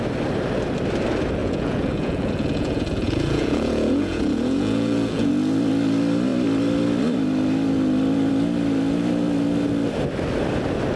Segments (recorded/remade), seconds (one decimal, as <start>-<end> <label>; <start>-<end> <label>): 0.0-1.4 recorded; 1.4-5.3 remade; 5.3-11.0 recorded